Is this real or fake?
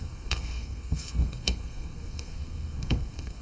fake